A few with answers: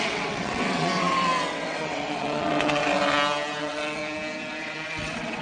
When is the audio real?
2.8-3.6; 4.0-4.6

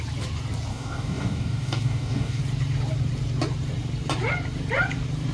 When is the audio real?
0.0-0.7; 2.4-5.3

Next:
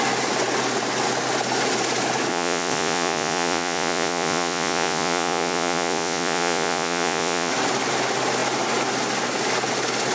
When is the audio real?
0.0-2.3; 7.5-10.1

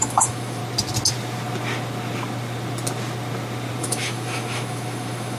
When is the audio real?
0.6-3.8